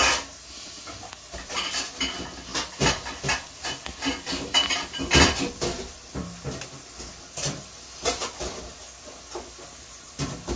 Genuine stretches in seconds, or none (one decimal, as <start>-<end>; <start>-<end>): 0.0-10.6